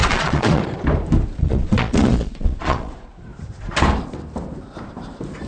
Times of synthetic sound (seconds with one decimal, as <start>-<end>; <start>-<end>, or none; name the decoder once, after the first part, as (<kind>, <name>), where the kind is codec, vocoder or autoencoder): 0.0-0.6 (vocoder, Vocos); 1.4-3.1